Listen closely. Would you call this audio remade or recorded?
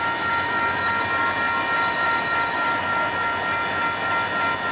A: recorded